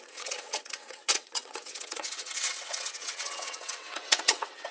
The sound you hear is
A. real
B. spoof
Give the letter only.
B